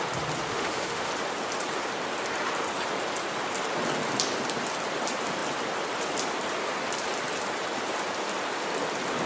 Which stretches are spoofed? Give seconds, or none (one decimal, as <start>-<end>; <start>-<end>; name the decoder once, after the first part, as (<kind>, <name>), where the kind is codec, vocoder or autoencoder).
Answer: 0.5-1.1 (autoencoder, DAC-VAE)